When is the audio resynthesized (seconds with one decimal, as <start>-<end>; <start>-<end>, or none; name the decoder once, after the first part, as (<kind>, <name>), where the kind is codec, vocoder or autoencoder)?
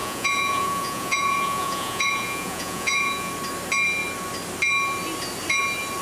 0.0-3.3 (vocoder, Vocos)